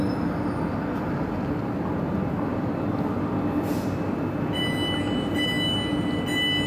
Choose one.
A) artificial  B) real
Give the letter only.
B